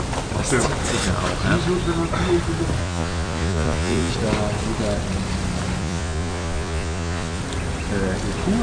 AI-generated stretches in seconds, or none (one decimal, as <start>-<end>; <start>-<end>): 2.8-4.1; 5.8-7.4